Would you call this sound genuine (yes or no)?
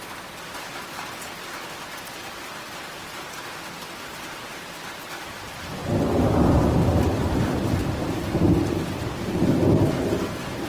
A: no